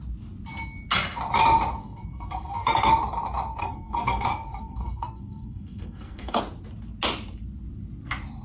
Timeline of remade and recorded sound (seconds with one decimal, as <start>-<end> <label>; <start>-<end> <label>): 0.0-1.8 recorded; 1.8-2.9 remade; 2.9-3.6 recorded; 3.6-6.4 remade; 6.4-8.4 recorded